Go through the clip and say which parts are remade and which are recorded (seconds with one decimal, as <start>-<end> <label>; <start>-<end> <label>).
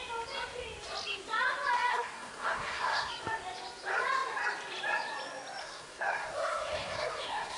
0.0-1.9 recorded; 1.9-3.1 remade; 3.1-5.6 recorded; 5.6-7.6 remade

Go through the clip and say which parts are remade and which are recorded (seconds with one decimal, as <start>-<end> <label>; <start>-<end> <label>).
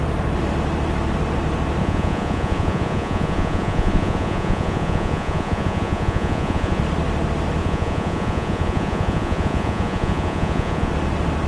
0.0-1.8 recorded; 1.8-6.8 remade; 6.8-7.6 recorded; 7.6-10.9 remade; 10.9-11.5 recorded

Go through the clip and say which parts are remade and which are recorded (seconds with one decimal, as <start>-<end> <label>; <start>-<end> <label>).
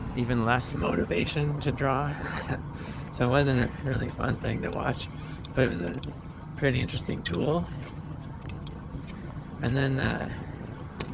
0.0-0.6 recorded; 0.6-11.1 remade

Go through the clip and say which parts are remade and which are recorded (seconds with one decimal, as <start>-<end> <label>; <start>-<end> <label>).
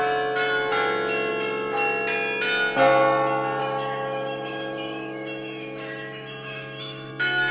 0.0-3.6 recorded; 3.6-7.1 remade; 7.1-7.5 recorded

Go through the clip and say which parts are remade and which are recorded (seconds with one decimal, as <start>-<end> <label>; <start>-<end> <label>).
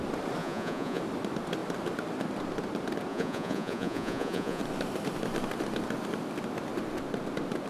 0.0-0.4 recorded; 0.4-1.0 remade; 1.0-3.1 recorded; 3.1-4.6 remade; 4.6-7.7 recorded